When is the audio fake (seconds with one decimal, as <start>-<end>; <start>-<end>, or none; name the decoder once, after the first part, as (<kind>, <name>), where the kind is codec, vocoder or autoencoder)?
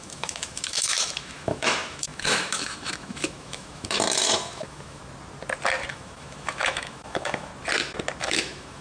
0.0-5.0 (autoencoder, DAC-VAE); 5.9-7.5; 8.2-8.8